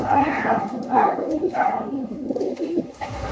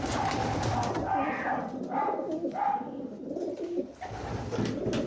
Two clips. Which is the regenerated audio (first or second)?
first